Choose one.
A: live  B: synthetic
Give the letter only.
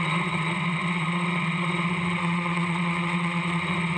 B